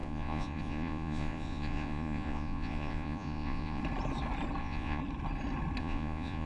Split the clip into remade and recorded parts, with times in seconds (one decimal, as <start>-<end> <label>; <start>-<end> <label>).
0.0-3.8 remade; 3.8-4.6 recorded; 4.6-5.0 remade; 5.0-5.8 recorded; 5.8-6.5 remade